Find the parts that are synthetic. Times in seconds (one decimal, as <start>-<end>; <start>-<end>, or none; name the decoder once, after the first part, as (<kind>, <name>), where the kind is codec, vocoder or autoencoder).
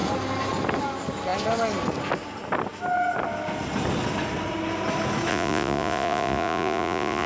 5.3-7.3 (vocoder, Vocos)